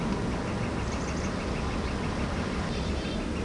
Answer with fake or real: real